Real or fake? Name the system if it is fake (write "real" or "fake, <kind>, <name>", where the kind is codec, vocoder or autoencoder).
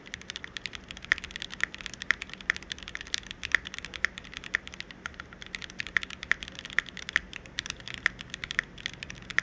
real